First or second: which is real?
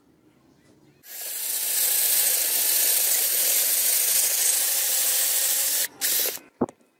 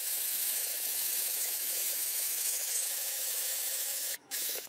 first